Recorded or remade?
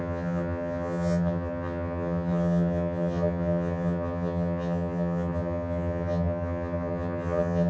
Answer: remade